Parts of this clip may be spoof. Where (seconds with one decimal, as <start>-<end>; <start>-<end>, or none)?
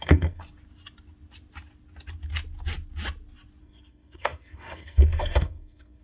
0.0-0.4; 3.6-6.0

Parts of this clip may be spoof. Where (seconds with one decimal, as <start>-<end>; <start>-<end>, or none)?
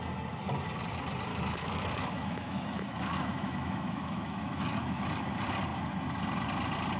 1.3-5.1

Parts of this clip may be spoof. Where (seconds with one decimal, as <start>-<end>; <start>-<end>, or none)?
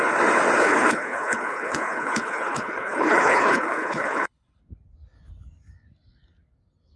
0.6-4.6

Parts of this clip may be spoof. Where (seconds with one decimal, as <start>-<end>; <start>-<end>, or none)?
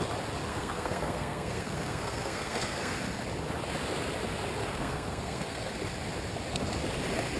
0.5-3.0; 4.6-5.7